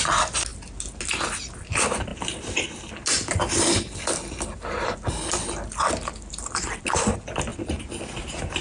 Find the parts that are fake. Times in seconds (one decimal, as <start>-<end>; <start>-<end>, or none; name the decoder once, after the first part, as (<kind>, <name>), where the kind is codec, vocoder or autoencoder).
none